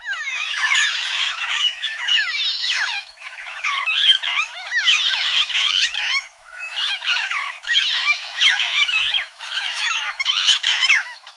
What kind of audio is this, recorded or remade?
remade